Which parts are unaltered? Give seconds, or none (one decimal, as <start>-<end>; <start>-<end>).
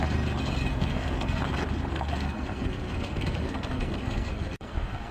0.0-0.7; 1.4-1.9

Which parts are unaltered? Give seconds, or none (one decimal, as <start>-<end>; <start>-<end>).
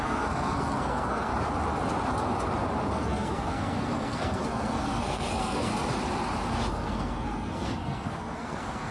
1.3-2.9; 5.7-6.7